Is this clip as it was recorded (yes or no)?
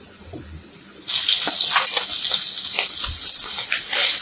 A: yes